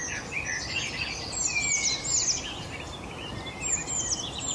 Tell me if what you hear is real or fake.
real